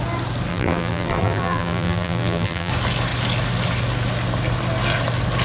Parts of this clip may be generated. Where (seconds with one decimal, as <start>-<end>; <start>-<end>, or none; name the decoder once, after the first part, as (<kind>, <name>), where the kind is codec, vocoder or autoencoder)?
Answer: 0.5-2.7 (vocoder, BigVGAN v2)